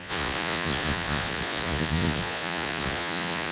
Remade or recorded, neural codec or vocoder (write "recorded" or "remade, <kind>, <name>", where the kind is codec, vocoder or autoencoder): remade, vocoder, Vocos